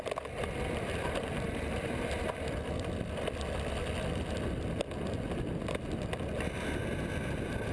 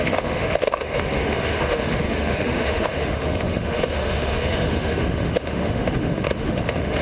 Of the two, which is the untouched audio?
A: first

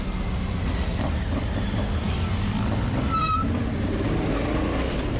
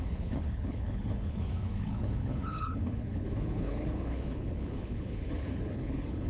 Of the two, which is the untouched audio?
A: first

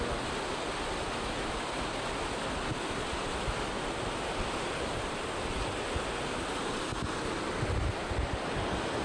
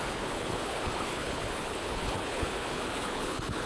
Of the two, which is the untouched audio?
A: first